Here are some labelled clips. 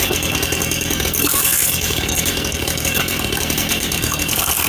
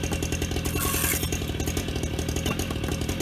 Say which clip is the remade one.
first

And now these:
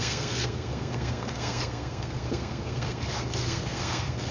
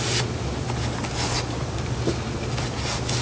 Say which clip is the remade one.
first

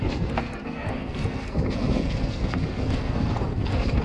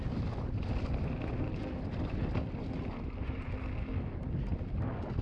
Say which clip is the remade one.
first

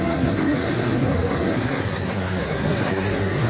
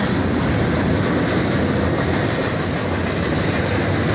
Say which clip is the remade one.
first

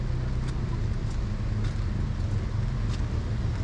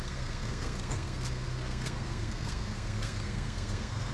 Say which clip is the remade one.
second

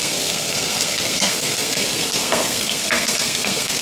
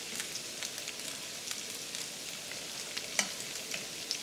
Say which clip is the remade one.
first